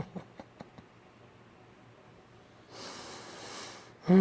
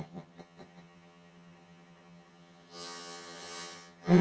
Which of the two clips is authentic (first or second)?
first